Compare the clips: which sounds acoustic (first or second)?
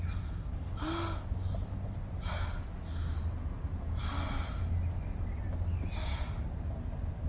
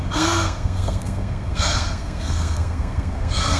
first